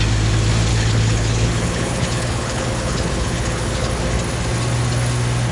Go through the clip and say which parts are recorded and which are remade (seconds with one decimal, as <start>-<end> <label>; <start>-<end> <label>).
0.0-0.7 recorded; 0.7-3.9 remade; 3.9-5.5 recorded